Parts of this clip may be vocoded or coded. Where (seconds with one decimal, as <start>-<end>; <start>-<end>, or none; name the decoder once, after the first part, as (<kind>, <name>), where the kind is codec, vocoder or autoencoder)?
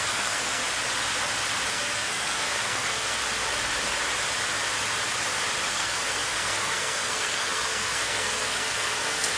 0.0-0.6 (codec, SNAC); 1.7-3.2; 5.7-9.4